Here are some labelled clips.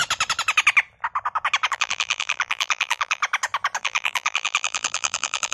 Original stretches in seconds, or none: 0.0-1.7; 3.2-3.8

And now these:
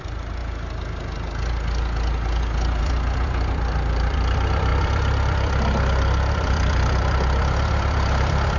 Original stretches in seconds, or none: 0.4-2.8

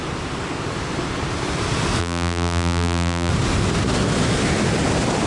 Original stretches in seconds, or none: 0.0-2.0; 3.3-5.3

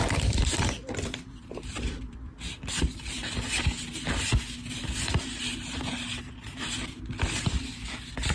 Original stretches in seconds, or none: 2.4-8.3

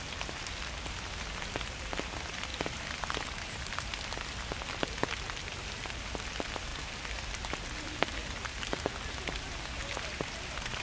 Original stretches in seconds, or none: 0.0-2.5; 3.7-9.8